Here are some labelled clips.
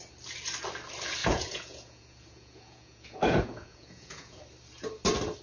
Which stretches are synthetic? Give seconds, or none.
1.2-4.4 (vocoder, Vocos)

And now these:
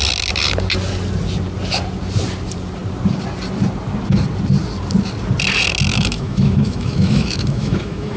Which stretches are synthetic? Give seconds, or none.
5.9-8.2 (autoencoder, DAC-VAE)

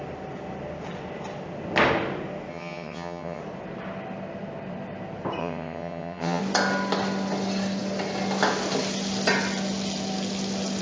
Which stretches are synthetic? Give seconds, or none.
2.5-3.4 (vocoder, HiFi-GAN); 5.4-6.4

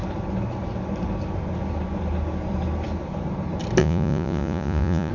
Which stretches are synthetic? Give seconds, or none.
3.8-5.1 (vocoder, Vocos)